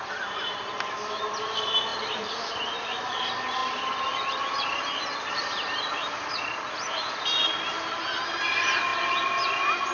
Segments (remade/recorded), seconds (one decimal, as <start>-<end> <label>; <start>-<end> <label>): 0.0-9.9 recorded